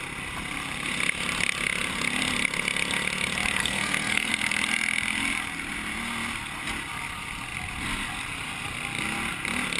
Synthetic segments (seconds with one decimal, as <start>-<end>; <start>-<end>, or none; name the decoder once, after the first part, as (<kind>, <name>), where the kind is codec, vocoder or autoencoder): 3.6-4.3 (codec, SNAC)